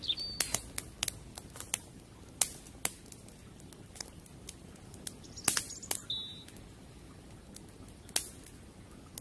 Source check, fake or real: real